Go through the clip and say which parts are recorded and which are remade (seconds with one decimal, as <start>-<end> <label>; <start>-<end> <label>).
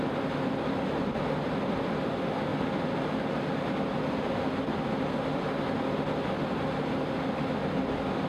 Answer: 0.0-8.3 recorded